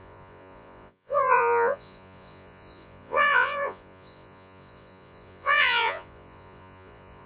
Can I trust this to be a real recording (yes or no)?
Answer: no